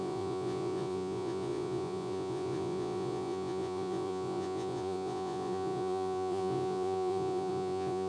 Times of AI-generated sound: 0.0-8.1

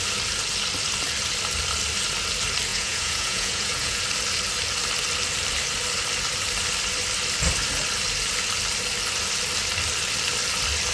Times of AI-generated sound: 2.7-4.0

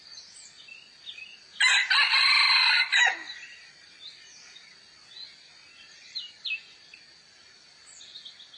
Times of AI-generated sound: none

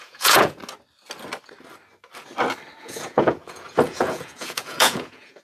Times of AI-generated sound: 0.0-0.6; 2.8-5.4

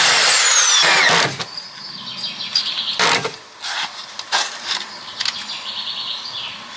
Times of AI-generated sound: none

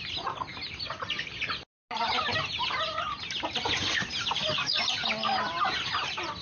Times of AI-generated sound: none

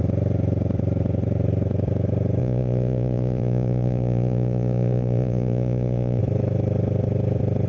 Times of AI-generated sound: 2.4-6.2

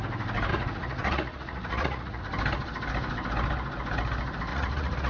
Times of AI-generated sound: 0.5-2.2; 4.5-5.1